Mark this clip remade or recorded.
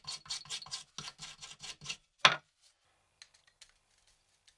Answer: recorded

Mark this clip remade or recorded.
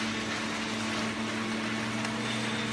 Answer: recorded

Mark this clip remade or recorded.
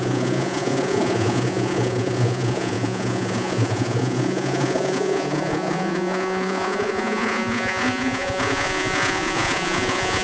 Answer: remade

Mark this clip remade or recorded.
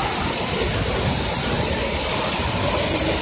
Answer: recorded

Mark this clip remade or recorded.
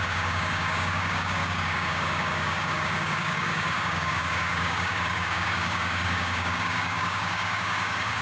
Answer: remade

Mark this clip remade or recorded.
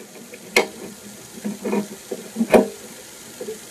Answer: recorded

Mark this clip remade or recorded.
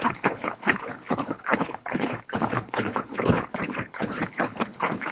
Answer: remade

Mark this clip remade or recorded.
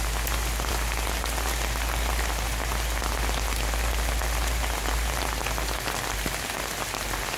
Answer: recorded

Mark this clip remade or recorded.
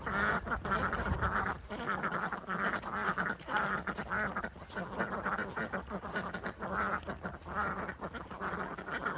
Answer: recorded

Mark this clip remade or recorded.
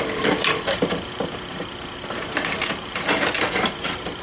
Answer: remade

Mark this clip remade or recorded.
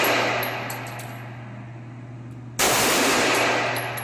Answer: recorded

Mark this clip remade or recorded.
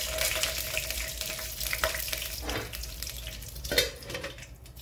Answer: recorded